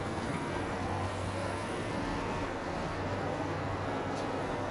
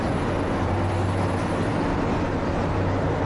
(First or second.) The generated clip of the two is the first